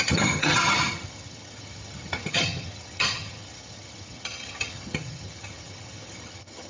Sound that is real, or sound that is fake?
fake